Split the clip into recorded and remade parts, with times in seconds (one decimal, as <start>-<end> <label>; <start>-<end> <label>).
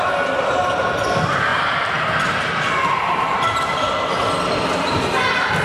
0.0-5.6 recorded